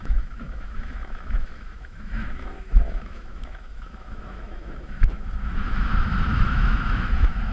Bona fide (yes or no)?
no